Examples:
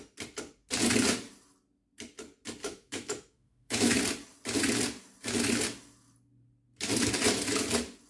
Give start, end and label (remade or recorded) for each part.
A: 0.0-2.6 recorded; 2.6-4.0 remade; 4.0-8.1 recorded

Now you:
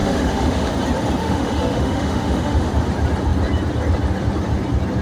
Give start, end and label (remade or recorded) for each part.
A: 0.0-0.7 remade; 0.7-1.2 recorded; 1.2-2.7 remade; 2.7-5.0 recorded

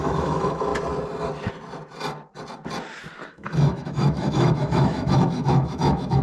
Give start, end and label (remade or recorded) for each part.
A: 0.0-0.7 remade; 0.7-3.3 recorded; 3.3-6.2 remade

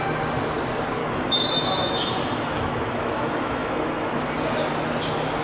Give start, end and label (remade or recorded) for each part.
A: 0.0-1.0 recorded; 1.0-4.2 remade; 4.2-5.4 recorded

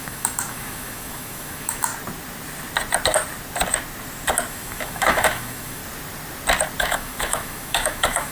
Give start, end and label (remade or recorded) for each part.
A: 0.0-1.9 remade; 1.9-4.5 recorded; 4.5-5.8 remade; 5.8-6.8 recorded; 6.8-8.3 remade

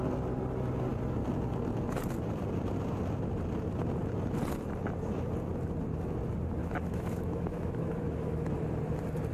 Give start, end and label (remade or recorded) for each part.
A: 0.0-6.6 recorded; 6.6-8.5 remade; 8.5-9.3 recorded

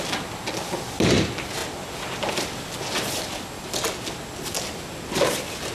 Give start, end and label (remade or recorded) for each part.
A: 0.0-5.7 recorded

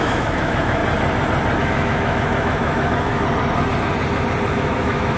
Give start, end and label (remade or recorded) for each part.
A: 0.0-0.8 remade; 0.8-1.6 recorded; 1.6-3.1 remade; 3.1-4.5 recorded; 4.5-5.2 remade